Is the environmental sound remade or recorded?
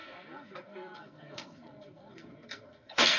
remade